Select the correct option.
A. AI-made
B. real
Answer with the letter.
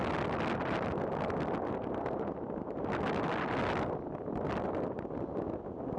B